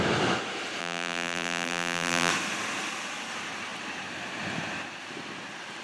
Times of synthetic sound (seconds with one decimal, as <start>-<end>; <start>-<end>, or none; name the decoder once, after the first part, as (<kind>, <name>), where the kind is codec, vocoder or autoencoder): 0.8-2.3 (vocoder, BigVGAN v2)